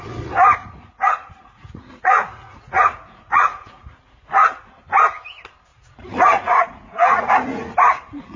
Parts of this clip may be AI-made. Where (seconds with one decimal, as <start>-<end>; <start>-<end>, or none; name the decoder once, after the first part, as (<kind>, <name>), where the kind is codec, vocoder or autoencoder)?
0.6-4.3 (vocoder, Vocos); 5.7-7.3